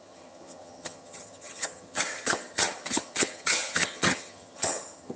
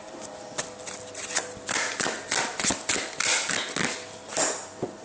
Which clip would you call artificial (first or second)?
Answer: first